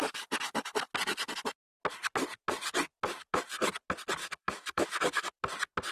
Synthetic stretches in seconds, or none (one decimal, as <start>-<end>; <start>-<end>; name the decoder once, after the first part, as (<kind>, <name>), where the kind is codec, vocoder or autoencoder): 4.2-5.3 (autoencoder, DAC-VAE)